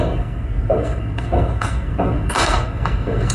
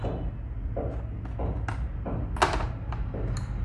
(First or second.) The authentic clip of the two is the second